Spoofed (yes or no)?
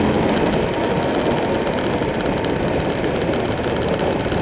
no